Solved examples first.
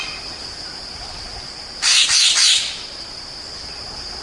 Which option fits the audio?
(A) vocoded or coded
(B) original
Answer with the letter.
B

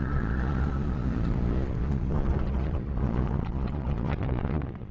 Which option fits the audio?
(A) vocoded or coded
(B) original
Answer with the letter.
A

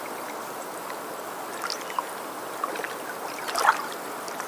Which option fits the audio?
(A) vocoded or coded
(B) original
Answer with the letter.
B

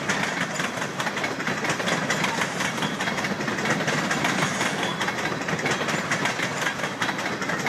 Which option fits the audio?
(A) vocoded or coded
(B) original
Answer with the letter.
B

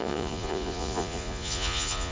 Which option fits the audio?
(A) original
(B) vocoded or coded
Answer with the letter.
B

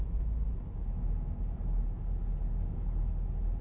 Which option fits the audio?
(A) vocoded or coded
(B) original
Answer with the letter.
B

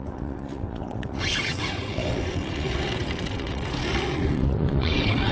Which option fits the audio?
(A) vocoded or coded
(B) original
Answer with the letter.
A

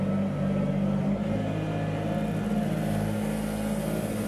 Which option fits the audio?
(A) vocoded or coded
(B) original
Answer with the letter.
B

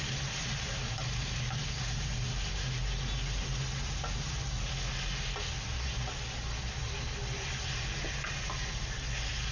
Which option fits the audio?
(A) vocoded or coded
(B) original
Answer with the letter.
B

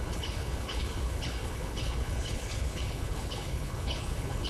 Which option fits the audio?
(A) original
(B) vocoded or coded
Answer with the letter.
B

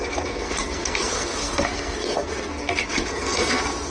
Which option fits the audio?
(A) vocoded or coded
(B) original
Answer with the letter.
A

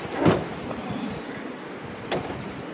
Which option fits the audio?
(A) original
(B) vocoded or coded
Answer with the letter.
A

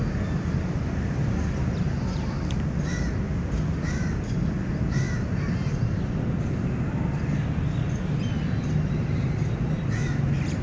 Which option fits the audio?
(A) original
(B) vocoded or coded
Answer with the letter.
A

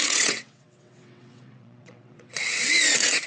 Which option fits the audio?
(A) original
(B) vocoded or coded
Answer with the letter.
B